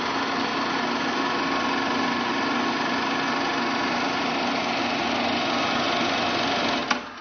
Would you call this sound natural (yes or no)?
yes